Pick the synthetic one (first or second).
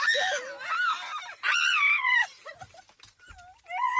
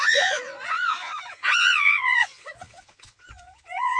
second